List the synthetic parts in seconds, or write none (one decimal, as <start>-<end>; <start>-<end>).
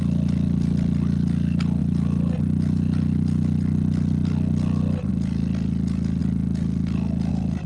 none